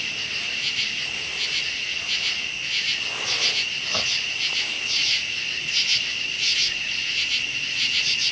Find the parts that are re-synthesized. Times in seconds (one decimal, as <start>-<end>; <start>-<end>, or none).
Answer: none